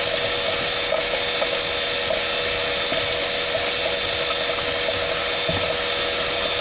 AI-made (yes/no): no